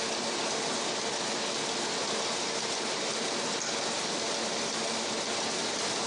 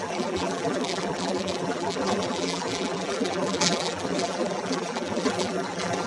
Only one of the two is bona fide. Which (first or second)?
first